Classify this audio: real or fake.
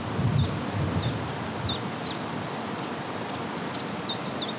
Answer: real